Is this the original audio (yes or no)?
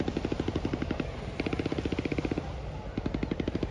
yes